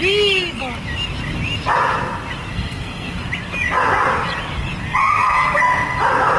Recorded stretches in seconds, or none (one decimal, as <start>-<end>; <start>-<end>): 0.0-2.5; 3.2-5.0; 5.6-6.4